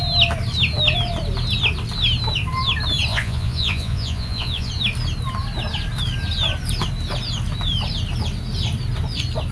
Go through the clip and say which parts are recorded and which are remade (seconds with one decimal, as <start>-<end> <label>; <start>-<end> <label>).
0.0-3.1 recorded; 3.1-4.7 remade; 4.7-9.5 recorded